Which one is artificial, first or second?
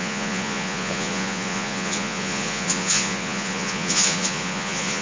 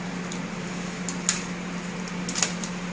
first